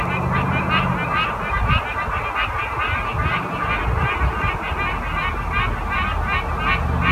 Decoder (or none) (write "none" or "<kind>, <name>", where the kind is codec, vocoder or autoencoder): none